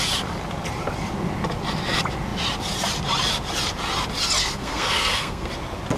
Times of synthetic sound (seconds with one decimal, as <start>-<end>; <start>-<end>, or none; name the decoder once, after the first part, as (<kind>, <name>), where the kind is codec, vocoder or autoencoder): 4.4-5.5 (codec, SNAC)